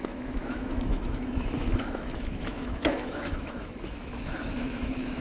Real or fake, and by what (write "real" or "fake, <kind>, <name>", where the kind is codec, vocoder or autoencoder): fake, autoencoder, DAC-VAE